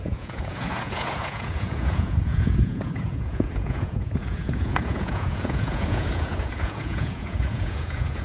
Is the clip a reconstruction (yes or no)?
yes